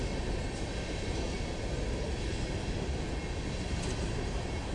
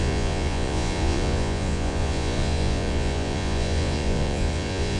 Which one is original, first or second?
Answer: first